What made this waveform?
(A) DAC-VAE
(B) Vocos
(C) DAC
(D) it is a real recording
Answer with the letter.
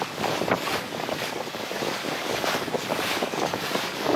C